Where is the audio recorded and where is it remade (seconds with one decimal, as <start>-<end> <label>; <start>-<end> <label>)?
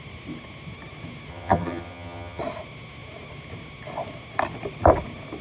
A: 0.0-1.3 recorded; 1.3-2.4 remade; 2.4-5.4 recorded